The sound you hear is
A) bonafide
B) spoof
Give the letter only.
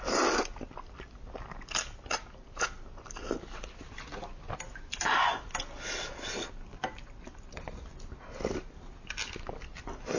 A